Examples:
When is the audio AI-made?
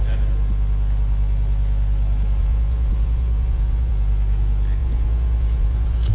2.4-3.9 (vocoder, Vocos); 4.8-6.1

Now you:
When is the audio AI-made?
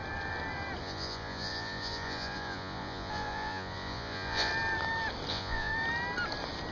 0.8-4.5 (vocoder, Vocos); 5.3-5.7